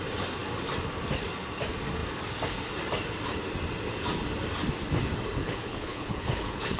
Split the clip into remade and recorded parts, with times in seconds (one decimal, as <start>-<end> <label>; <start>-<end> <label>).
0.0-5.4 recorded; 5.4-6.8 remade